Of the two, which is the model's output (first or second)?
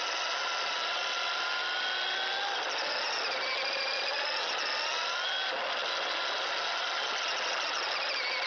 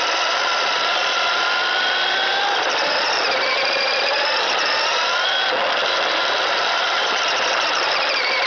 second